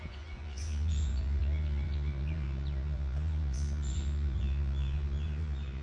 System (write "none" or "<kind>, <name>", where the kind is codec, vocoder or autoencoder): vocoder, Vocos